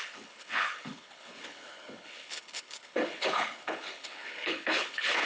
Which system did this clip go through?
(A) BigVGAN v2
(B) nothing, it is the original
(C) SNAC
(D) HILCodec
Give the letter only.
D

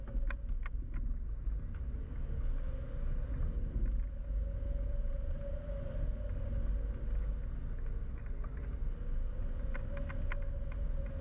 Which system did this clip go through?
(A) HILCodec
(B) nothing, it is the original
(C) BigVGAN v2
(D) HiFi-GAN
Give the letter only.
B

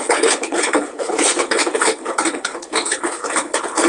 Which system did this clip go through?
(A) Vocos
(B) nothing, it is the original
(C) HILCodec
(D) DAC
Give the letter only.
C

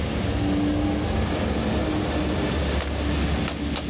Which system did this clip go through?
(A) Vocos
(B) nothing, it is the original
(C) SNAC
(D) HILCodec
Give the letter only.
B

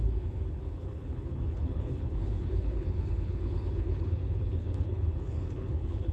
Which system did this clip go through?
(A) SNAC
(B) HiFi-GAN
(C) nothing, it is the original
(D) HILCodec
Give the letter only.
D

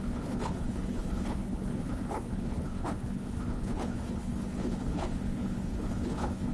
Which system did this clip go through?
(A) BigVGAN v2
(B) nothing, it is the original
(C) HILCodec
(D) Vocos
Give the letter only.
C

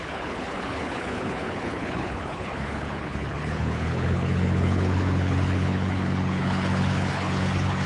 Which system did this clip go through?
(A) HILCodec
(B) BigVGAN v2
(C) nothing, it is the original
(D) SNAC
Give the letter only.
A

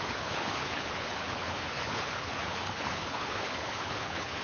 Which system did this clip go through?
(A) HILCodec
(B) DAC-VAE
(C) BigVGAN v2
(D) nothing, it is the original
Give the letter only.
A